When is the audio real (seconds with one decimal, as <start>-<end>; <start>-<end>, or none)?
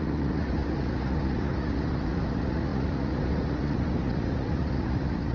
none